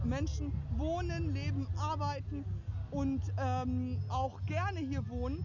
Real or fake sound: real